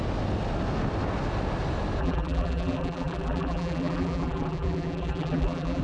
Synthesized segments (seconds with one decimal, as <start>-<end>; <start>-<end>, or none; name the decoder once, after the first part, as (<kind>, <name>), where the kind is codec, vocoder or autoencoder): 2.0-5.8 (vocoder, BigVGAN v2)